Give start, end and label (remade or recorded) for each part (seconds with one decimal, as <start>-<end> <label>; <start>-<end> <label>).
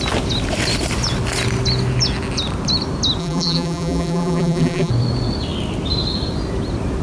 0.0-3.2 recorded; 3.2-4.9 remade; 4.9-7.0 recorded